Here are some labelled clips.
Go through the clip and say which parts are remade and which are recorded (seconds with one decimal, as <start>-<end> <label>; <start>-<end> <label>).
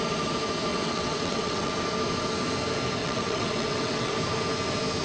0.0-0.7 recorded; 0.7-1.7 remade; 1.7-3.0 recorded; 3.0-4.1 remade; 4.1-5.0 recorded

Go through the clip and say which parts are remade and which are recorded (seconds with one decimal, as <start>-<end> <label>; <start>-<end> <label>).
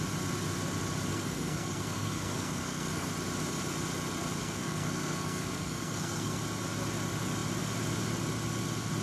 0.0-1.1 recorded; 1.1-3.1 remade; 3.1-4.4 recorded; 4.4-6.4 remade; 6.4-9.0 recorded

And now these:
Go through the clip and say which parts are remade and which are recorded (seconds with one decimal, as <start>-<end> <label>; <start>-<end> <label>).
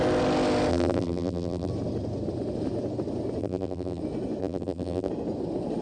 0.0-0.7 recorded; 0.7-1.7 remade; 1.7-3.4 recorded; 3.4-4.0 remade; 4.0-4.4 recorded; 4.4-5.1 remade; 5.1-5.8 recorded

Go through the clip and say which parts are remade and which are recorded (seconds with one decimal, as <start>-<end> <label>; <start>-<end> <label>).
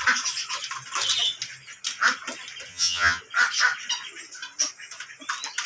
0.0-2.7 recorded; 2.7-3.2 remade; 3.2-5.7 recorded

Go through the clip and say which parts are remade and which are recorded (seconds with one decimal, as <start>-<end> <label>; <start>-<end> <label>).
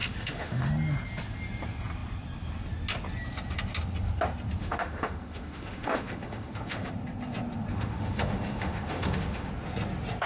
0.0-0.7 remade; 0.7-4.6 recorded; 4.6-6.9 remade; 6.9-7.7 recorded; 7.7-9.5 remade; 9.5-10.3 recorded